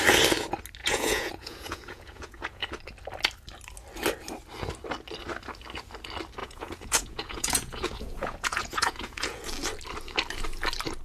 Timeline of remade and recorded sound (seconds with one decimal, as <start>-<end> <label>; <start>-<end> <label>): 0.0-0.8 recorded; 0.8-2.7 remade; 2.7-6.4 recorded; 6.4-9.4 remade; 9.4-11.0 recorded